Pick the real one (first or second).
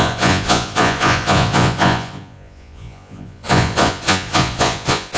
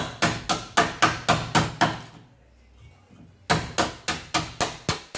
second